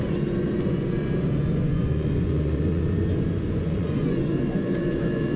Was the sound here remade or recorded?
remade